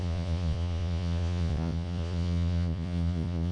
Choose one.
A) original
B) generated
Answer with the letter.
B